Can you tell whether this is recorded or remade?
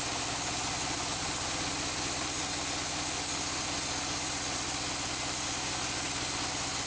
recorded